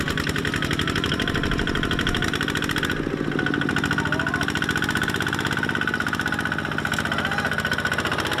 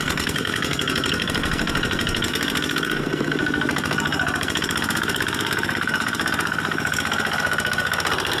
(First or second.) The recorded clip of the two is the first